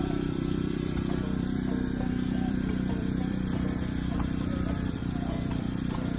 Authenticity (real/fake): fake